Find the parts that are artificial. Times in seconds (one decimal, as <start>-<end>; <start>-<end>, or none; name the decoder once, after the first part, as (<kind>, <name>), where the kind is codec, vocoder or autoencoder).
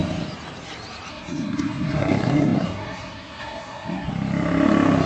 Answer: 1.1-4.1 (codec, SNAC)